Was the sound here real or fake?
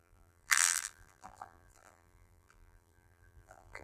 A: fake